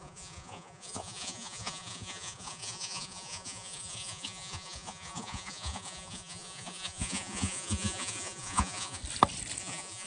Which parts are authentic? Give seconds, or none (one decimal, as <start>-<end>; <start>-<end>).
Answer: 9.0-9.6